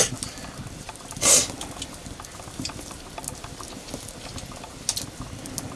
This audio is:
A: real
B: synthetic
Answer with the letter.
A